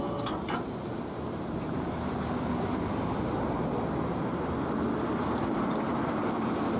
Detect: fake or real real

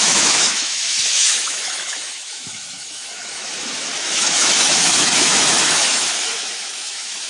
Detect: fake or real fake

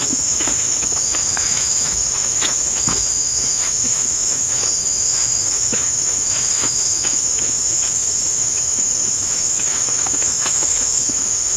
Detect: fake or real fake